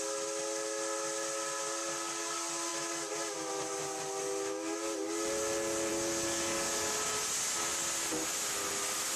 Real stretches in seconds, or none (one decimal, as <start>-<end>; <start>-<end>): 0.0-9.2